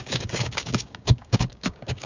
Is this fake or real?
fake